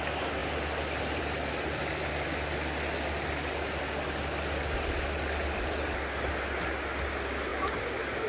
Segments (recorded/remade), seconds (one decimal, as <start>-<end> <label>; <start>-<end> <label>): 0.0-8.3 recorded